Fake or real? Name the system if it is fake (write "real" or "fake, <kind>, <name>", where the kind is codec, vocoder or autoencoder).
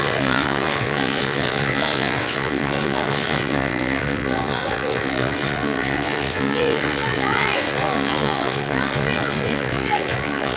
fake, vocoder, WaveNeXt